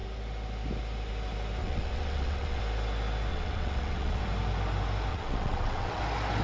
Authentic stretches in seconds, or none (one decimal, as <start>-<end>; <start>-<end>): 0.0-1.6; 2.6-3.3; 4.2-5.1; 6.0-6.4